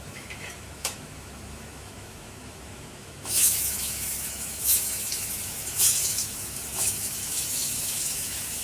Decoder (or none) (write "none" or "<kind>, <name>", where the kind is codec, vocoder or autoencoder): autoencoder, DAC-VAE